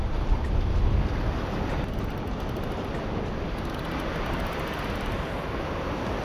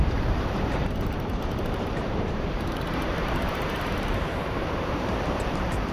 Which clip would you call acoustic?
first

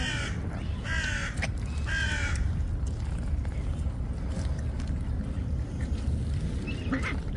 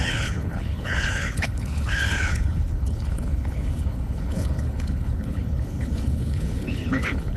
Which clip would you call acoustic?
first